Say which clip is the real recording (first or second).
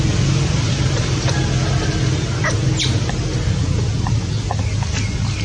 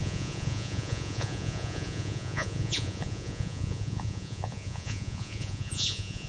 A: first